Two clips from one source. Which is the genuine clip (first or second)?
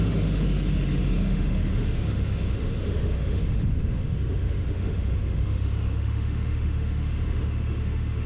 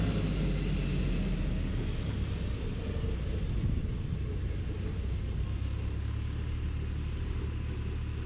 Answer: second